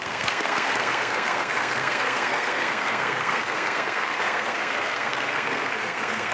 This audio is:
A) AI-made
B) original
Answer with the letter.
A